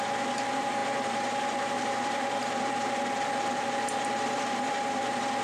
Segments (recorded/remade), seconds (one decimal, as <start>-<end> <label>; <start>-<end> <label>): 0.0-5.4 remade

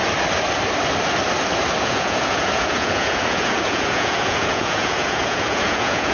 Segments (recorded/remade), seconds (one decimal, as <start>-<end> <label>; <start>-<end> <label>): 0.0-1.8 recorded; 1.8-6.1 remade

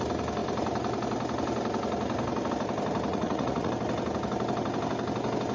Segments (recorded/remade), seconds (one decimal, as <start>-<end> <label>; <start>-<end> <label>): 0.0-3.1 recorded; 3.1-3.7 remade; 3.7-5.5 recorded

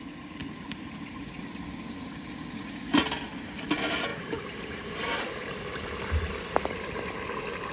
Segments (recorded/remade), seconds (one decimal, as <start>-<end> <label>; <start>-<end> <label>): 0.0-0.4 recorded; 0.4-1.4 remade; 1.4-4.1 recorded; 4.1-5.2 remade; 5.2-7.7 recorded

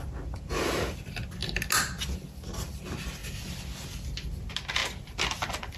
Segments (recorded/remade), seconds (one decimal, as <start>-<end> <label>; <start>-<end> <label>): 0.0-5.8 recorded

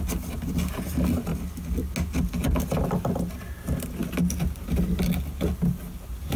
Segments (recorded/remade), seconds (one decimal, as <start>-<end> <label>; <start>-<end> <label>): 0.0-6.4 recorded